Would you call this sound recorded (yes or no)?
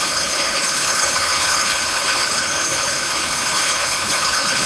no